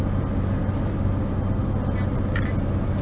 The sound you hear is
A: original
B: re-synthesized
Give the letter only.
A